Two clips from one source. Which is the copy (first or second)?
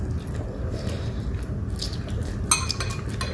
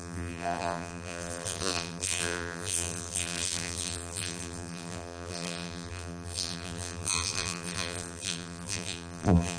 second